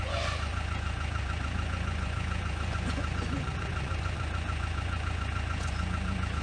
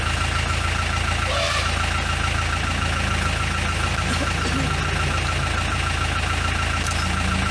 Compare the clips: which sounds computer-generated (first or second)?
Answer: first